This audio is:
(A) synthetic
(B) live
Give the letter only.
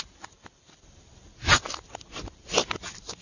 B